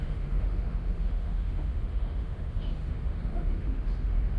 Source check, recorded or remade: remade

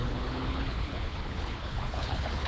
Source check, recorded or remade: remade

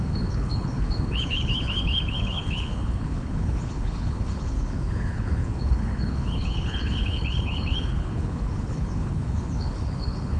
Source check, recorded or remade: remade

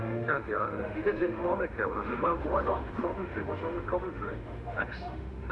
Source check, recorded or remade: remade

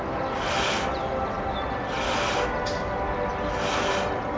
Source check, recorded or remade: recorded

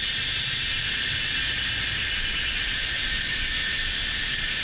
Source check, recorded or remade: recorded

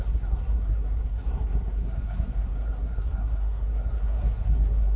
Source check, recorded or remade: remade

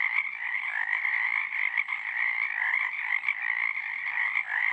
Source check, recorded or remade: recorded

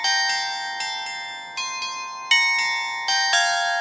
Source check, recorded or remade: recorded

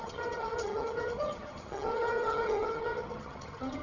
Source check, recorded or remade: remade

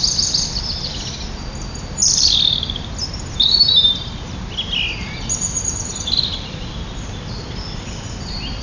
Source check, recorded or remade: recorded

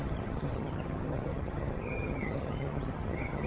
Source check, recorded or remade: remade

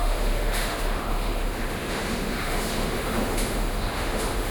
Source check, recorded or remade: remade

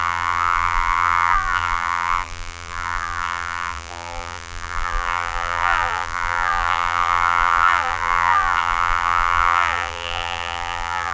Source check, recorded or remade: remade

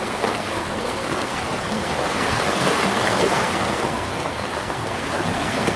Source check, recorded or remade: remade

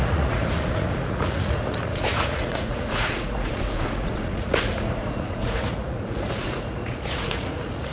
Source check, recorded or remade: remade